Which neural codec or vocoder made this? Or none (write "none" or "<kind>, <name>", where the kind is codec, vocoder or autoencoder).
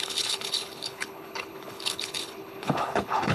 codec, HILCodec